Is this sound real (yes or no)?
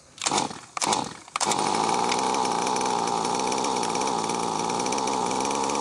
yes